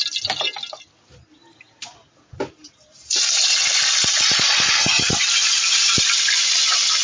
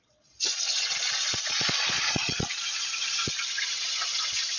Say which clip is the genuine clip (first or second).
first